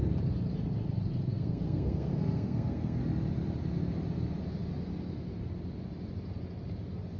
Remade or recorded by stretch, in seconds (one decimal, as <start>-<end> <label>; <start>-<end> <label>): 0.0-1.3 recorded; 1.3-3.0 remade; 3.0-7.2 recorded